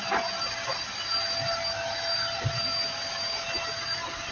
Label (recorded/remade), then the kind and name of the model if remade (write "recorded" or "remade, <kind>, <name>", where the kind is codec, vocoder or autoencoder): remade, vocoder, BigVGAN v2